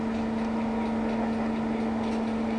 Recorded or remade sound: recorded